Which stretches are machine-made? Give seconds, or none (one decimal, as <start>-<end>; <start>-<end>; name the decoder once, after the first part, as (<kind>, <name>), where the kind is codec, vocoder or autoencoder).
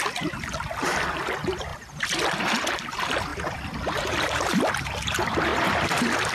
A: 0.0-5.5 (vocoder, BigVGAN v2)